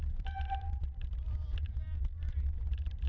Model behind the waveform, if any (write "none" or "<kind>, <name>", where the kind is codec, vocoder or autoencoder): vocoder, BigVGAN v2